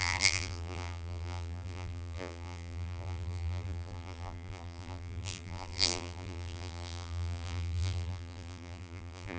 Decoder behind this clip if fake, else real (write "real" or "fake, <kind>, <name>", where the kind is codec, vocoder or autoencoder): fake, vocoder, BigVGAN v2